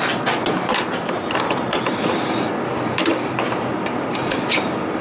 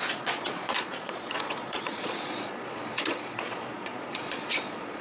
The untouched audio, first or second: first